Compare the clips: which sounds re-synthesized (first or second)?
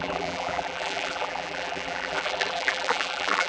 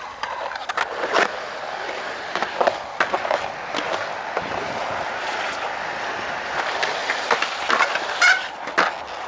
first